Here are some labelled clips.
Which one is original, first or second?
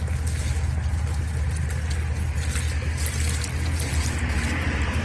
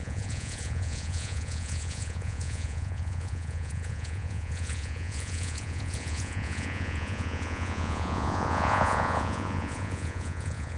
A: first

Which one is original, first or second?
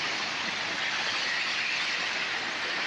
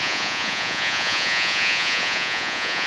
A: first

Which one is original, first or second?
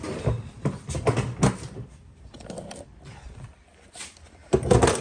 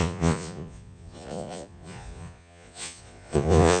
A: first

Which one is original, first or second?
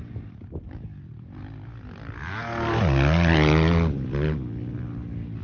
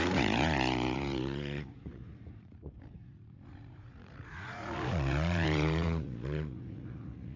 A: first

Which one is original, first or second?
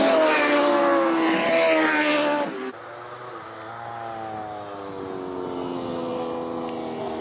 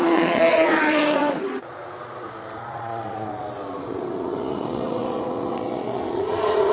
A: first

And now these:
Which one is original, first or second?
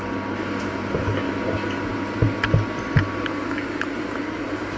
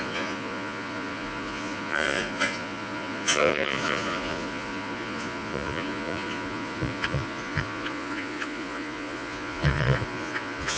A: first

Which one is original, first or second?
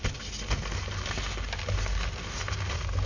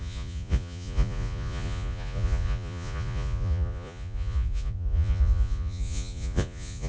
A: first